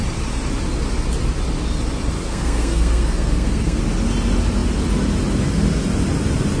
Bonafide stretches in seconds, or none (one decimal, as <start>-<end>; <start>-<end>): 0.0-2.2; 3.8-6.6